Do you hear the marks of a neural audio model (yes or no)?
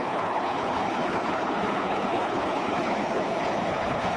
yes